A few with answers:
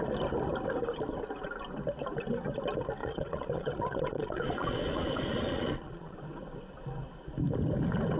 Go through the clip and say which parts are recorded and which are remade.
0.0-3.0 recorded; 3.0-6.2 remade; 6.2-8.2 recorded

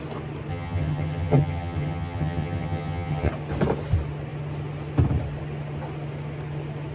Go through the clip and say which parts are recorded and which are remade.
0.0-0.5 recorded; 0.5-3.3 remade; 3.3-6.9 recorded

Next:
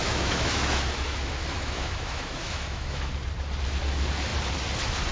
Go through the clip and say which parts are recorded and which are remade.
0.0-3.1 remade; 3.1-5.1 recorded

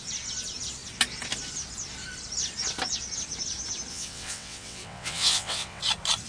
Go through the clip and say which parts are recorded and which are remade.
0.0-3.9 recorded; 3.9-5.8 remade; 5.8-6.3 recorded